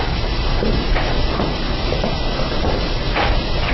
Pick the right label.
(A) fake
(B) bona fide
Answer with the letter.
A